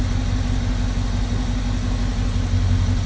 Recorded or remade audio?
recorded